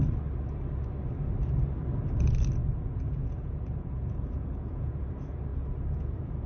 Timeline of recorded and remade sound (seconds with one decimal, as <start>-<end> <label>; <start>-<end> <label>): 0.0-2.6 recorded; 2.6-5.1 remade; 5.1-5.5 recorded; 5.5-6.5 remade